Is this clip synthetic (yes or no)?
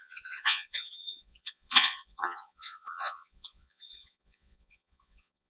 yes